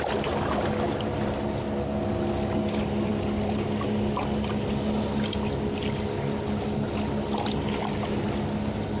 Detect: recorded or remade recorded